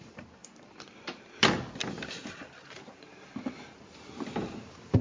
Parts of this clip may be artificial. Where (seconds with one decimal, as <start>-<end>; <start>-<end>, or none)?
none